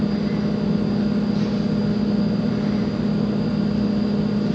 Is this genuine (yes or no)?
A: yes